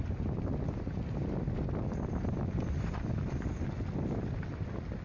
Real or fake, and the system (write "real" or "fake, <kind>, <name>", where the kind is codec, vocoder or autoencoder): real